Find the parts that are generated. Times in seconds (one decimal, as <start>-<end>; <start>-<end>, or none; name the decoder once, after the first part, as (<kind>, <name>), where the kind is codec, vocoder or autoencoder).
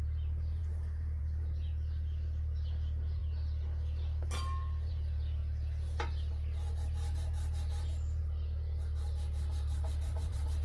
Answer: 0.0-3.2 (vocoder, BigVGAN v2); 4.9-10.6